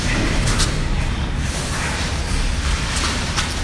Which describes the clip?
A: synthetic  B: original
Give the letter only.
B